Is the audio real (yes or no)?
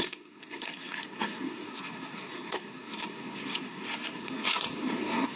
no